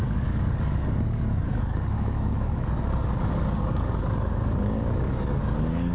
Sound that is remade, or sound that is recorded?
remade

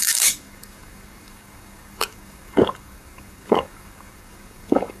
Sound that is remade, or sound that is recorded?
remade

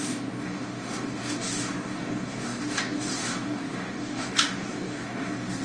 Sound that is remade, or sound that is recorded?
remade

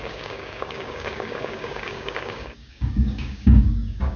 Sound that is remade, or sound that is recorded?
remade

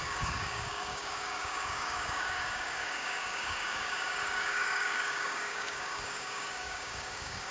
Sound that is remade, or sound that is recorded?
remade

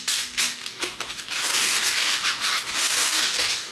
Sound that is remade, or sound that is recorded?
remade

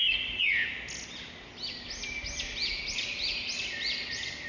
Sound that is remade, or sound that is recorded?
recorded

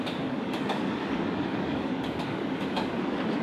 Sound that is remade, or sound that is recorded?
remade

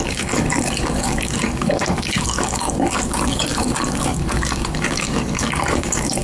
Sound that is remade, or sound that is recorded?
remade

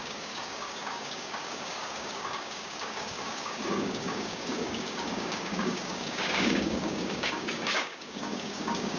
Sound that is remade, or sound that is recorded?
remade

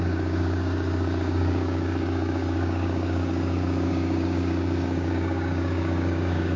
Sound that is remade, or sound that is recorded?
remade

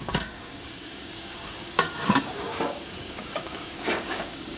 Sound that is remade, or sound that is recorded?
remade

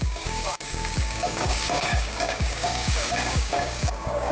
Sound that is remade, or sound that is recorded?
remade